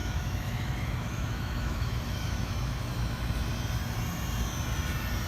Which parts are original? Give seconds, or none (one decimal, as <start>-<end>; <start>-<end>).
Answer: 3.2-5.3